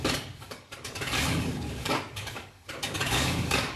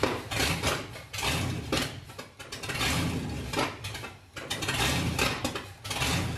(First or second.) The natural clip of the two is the second